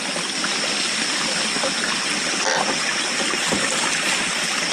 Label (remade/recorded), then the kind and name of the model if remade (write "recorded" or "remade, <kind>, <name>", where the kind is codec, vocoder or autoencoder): recorded